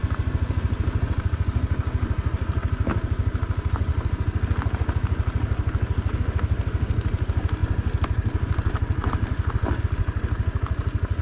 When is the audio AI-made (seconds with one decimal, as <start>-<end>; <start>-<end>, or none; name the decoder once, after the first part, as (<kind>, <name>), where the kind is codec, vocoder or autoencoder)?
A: none